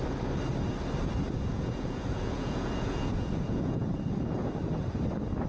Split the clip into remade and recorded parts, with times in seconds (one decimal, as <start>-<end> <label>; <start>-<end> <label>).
0.0-1.5 recorded; 1.5-4.6 remade; 4.6-5.5 recorded